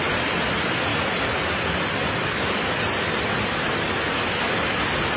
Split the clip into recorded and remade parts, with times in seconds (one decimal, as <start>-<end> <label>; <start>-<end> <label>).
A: 0.0-5.2 recorded